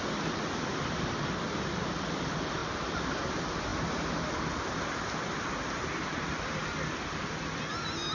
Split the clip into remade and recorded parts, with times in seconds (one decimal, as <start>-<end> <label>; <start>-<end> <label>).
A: 0.0-8.1 recorded